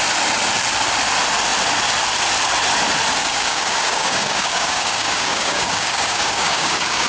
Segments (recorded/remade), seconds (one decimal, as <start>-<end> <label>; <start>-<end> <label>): 0.0-3.2 recorded; 3.2-7.1 remade